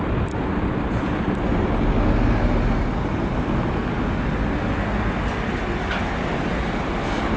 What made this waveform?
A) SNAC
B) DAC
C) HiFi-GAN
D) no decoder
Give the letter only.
D